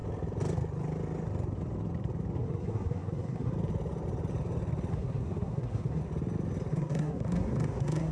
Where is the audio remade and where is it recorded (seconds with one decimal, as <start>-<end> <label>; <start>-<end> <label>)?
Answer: 0.0-2.4 recorded; 2.4-3.5 remade; 3.5-4.9 recorded; 4.9-6.0 remade; 6.0-6.7 recorded; 6.7-8.1 remade